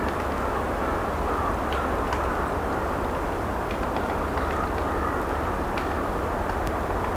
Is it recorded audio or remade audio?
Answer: recorded